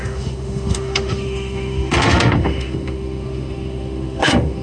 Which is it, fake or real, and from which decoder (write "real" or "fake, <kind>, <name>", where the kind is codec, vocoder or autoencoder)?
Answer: fake, autoencoder, DAC-VAE